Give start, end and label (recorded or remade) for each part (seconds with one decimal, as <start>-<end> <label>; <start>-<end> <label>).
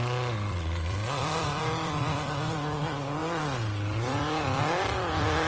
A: 0.0-5.5 remade